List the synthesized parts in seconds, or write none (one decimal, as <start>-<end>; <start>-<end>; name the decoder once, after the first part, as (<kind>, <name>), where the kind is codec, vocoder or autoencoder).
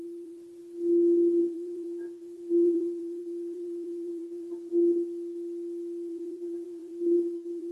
0.0-0.6 (vocoder, BigVGAN v2); 1.4-4.7; 6.1-7.7